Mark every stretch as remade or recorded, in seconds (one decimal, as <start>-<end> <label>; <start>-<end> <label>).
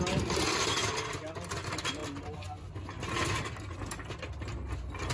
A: 0.0-5.1 recorded